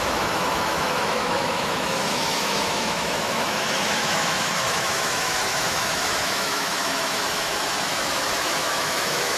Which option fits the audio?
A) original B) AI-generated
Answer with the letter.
B